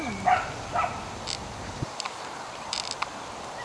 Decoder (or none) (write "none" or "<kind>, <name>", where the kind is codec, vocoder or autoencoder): none